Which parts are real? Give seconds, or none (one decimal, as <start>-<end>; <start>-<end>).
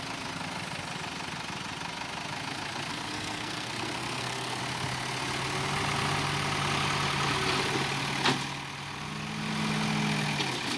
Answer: 0.0-2.9; 4.6-10.8